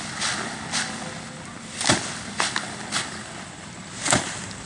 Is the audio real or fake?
real